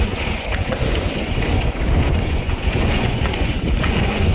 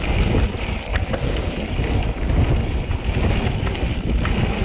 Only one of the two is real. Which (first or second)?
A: second